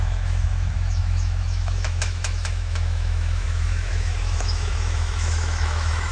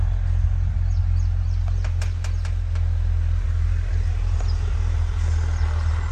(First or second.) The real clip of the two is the second